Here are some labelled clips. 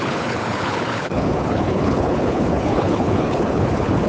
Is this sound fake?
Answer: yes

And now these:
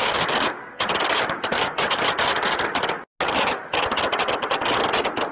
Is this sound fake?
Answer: no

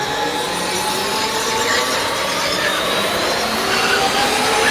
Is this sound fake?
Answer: no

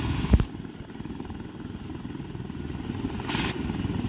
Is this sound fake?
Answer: yes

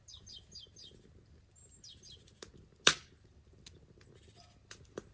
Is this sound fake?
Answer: no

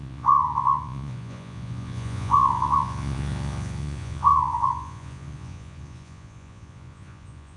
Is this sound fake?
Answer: yes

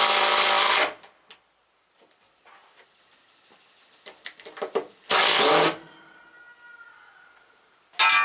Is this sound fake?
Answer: no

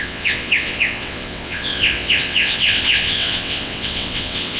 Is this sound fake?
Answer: yes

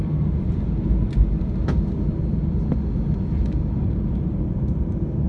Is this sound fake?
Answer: no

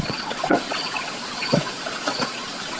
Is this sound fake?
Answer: yes